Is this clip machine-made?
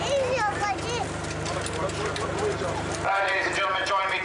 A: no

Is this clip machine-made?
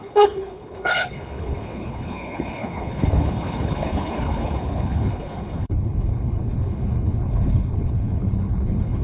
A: yes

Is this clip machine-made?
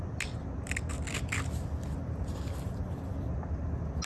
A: no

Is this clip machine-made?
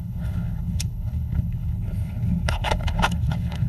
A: yes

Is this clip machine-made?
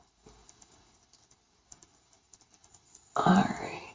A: no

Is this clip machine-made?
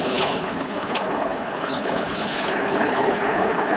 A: yes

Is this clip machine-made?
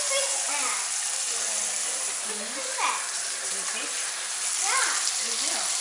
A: no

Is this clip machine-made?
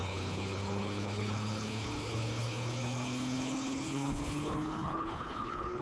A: yes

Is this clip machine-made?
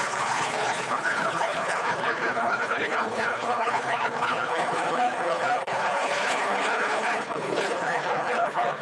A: yes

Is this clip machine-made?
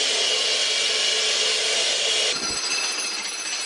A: no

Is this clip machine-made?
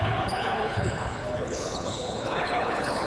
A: yes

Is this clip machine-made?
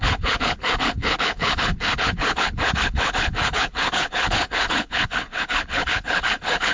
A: yes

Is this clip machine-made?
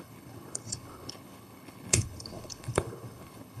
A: yes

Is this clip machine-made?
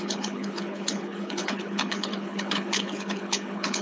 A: yes